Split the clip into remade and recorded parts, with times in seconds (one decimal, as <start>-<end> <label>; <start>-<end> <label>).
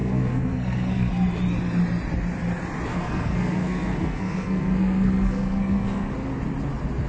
0.0-1.1 remade; 1.1-2.9 recorded; 2.9-6.1 remade; 6.1-7.1 recorded